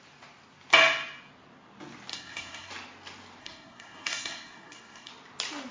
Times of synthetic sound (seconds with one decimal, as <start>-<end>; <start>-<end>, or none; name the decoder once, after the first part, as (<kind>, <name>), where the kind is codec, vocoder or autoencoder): 2.1-2.7 (codec, SNAC); 3.4-5.1